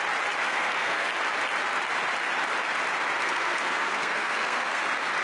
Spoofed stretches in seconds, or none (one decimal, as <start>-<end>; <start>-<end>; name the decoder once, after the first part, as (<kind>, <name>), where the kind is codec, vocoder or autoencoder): 0.4-1.1 (codec, SNAC); 3.2-4.8